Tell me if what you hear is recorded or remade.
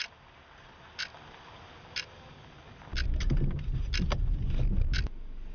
recorded